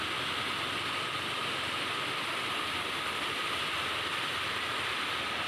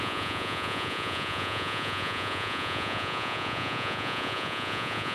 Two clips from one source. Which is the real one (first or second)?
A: first